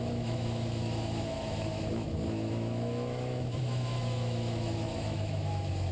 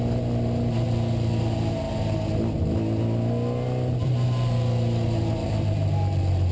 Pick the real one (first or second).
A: second